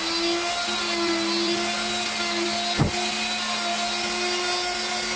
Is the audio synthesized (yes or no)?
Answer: no